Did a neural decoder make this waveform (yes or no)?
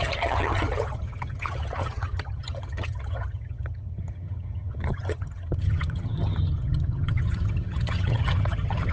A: yes